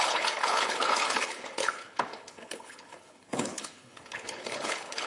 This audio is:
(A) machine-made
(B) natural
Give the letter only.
A